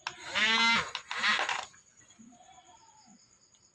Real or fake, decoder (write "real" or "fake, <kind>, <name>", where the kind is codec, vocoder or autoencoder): real